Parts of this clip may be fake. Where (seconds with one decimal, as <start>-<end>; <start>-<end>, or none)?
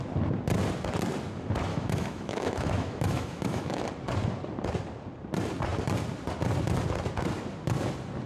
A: 1.7-3.8